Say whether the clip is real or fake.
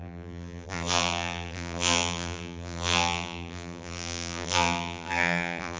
fake